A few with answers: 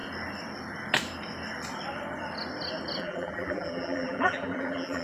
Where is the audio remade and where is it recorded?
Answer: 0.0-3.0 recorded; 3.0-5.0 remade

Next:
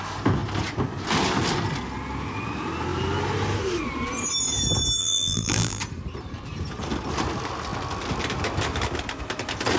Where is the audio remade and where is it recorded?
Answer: 0.0-5.0 recorded; 5.0-5.8 remade; 5.8-9.8 recorded

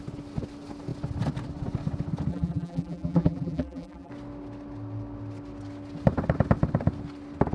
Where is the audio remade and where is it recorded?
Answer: 0.0-2.3 recorded; 2.3-4.1 remade; 4.1-7.5 recorded

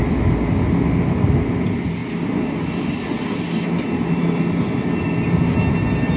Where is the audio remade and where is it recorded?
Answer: 0.0-6.2 recorded

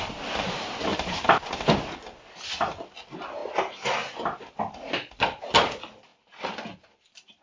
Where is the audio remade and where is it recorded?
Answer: 0.0-0.9 recorded; 0.9-1.5 remade; 1.5-7.4 recorded